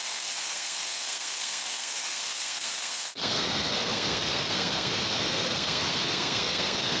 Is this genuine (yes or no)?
no